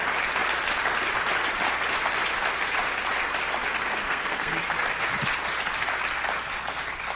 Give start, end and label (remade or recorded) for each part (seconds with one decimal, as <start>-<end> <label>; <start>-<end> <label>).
0.0-3.9 recorded; 3.9-4.6 remade; 4.6-7.2 recorded